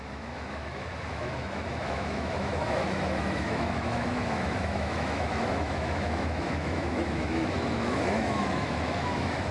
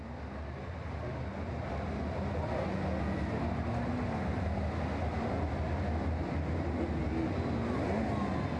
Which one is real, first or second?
second